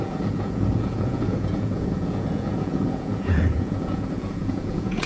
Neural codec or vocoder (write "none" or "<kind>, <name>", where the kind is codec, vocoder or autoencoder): vocoder, Vocos